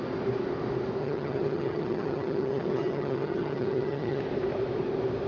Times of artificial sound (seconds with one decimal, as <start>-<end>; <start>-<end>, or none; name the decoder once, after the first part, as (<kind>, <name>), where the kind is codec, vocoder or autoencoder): 1.0-4.2 (vocoder, HiFi-GAN)